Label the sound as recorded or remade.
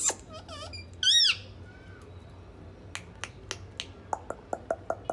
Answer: recorded